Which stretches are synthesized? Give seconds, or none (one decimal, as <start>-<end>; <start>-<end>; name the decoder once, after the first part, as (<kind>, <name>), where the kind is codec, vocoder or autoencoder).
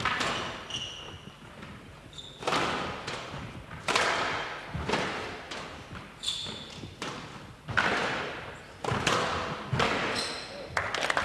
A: none